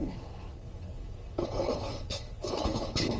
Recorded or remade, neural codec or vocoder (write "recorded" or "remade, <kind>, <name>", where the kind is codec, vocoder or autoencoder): remade, codec, HILCodec